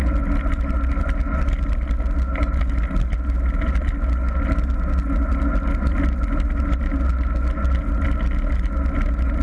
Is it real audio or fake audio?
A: real